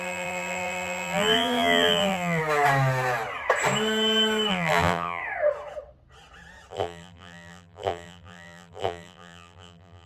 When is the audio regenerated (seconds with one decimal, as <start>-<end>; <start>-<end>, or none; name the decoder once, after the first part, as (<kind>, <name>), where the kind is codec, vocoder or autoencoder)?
0.0-2.4 (vocoder, BigVGAN v2); 4.5-5.2; 6.7-10.1